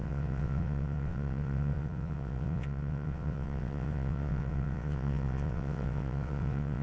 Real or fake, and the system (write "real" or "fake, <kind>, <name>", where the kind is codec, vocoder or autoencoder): fake, vocoder, WaveNeXt